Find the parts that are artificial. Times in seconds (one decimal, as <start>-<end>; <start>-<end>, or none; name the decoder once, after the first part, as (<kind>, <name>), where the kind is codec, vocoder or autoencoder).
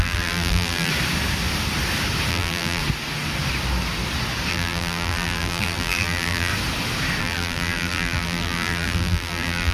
0.0-0.9 (vocoder, BigVGAN v2); 2.3-2.8; 4.5-6.5; 7.2-9.7